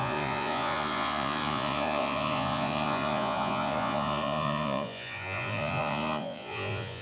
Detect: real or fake fake